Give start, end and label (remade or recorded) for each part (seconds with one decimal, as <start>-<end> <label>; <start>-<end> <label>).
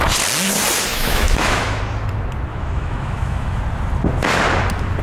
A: 0.0-0.9 recorded; 0.9-1.8 remade; 1.8-2.5 recorded; 2.5-3.6 remade; 3.6-5.0 recorded